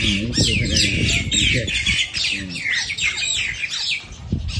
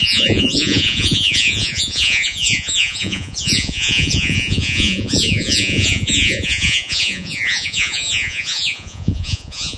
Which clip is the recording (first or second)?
first